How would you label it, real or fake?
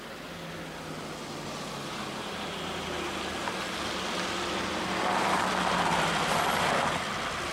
real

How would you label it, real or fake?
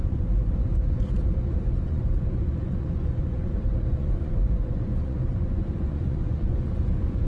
fake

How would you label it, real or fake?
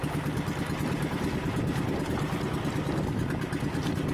real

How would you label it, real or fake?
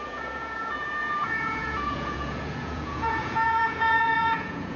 fake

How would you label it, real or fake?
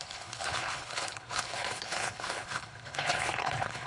fake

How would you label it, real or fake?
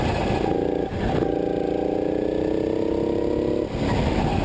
real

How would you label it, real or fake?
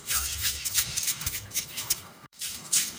fake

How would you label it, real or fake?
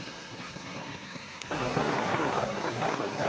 fake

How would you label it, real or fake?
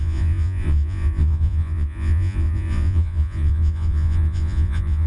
fake